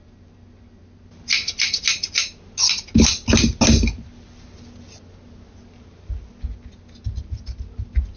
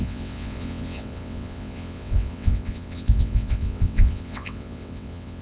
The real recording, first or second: first